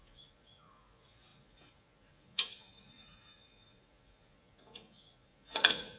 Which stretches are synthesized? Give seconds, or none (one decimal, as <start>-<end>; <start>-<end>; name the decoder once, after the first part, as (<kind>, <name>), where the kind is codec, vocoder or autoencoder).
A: 0.0-6.0 (vocoder, Vocos)